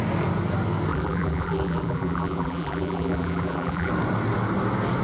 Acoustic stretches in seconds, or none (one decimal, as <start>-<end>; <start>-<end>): 0.0-0.9; 3.9-5.0